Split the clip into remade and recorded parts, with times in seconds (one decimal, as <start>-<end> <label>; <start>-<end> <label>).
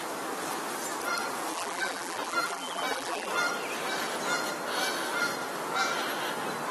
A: 0.0-1.5 recorded; 1.5-3.3 remade; 3.3-6.7 recorded